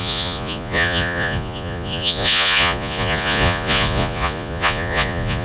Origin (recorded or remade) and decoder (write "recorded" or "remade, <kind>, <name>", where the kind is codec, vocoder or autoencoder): remade, vocoder, Vocos